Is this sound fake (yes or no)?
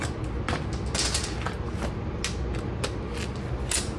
no